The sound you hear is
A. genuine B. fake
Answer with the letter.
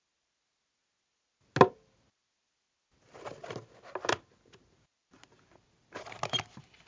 A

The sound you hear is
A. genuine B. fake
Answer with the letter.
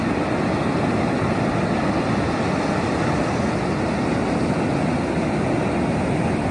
A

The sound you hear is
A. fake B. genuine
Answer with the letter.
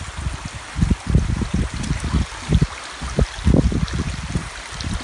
B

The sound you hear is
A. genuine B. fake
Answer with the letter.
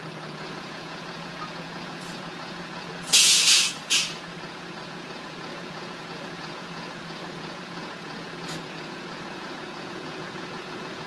B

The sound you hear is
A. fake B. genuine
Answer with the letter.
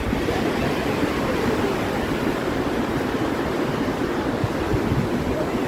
B